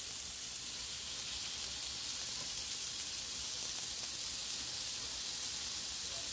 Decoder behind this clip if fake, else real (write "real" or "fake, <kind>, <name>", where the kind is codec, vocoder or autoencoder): real